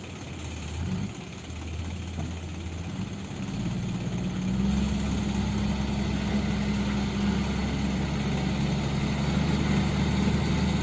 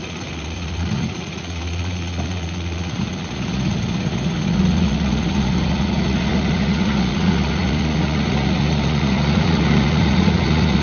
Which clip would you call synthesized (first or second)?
second